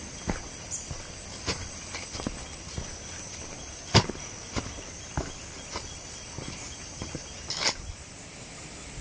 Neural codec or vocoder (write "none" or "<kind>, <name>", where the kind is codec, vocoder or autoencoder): none